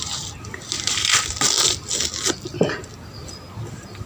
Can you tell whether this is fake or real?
real